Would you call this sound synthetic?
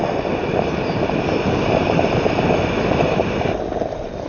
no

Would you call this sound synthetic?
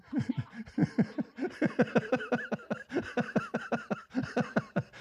no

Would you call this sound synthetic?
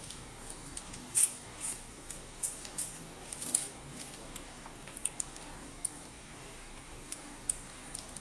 yes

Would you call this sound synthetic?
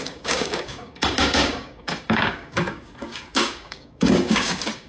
yes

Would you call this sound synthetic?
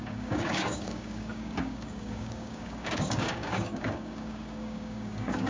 yes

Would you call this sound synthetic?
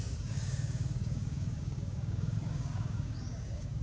yes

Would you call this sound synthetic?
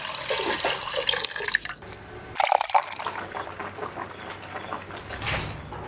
no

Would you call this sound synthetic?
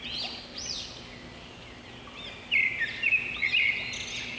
no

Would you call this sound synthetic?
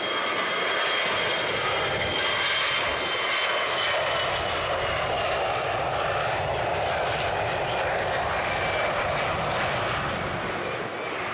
no